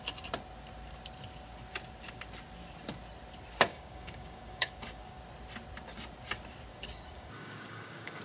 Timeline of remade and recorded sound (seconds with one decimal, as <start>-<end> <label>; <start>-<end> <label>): 0.0-3.7 recorded; 3.7-5.2 remade; 5.2-6.7 recorded; 6.7-8.2 remade